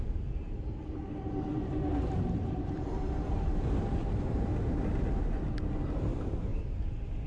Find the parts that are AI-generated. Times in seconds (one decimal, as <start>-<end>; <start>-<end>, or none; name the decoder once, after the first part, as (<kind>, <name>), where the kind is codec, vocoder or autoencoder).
0.0-4.5 (vocoder, BigVGAN v2); 6.0-6.5